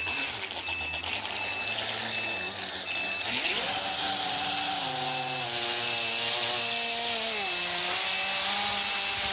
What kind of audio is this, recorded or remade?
recorded